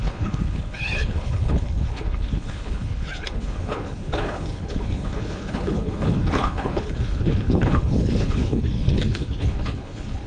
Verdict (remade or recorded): remade